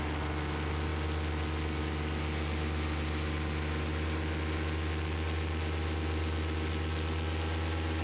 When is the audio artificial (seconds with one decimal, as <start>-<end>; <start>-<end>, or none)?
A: none